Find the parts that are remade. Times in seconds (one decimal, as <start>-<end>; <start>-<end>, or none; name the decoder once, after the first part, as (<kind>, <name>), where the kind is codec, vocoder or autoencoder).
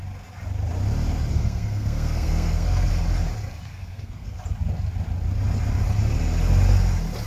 1.3-2.9 (codec, SNAC); 3.7-4.4